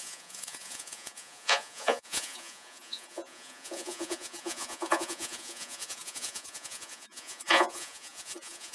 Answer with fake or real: fake